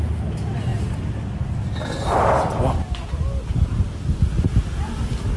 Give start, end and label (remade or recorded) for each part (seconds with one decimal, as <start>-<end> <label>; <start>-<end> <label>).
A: 0.0-5.4 recorded

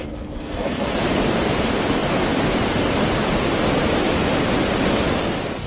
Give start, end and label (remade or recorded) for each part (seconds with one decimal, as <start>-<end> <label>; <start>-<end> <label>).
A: 0.0-0.9 remade; 0.9-5.7 recorded

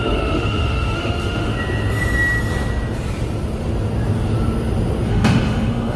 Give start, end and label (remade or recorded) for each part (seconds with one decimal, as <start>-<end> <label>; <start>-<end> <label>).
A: 0.0-1.5 remade; 1.5-5.1 recorded; 5.1-6.0 remade

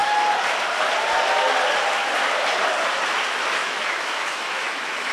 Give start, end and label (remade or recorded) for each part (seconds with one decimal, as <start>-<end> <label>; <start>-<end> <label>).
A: 0.0-3.6 recorded; 3.6-5.1 remade

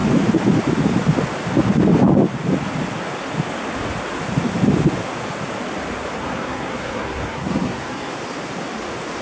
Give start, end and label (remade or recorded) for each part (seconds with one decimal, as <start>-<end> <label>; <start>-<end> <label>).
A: 0.0-6.2 recorded; 6.2-8.1 remade; 8.1-9.2 recorded

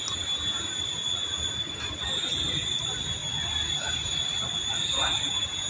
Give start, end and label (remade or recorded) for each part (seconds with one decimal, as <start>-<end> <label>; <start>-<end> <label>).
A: 0.0-5.7 recorded